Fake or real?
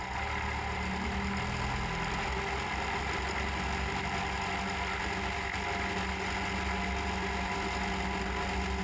real